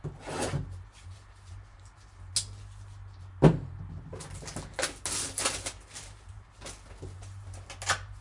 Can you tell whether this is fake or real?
real